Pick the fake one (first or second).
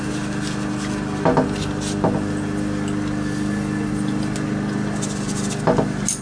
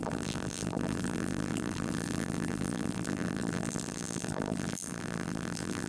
second